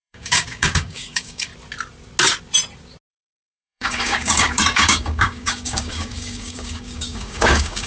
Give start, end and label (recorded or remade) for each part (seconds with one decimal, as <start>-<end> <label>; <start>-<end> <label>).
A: 0.0-1.5 remade; 1.5-3.1 recorded; 3.1-7.9 remade